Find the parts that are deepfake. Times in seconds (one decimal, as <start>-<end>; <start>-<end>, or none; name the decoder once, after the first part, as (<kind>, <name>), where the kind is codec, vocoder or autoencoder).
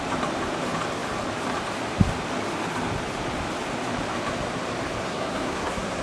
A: 5.0-6.0 (codec, SNAC)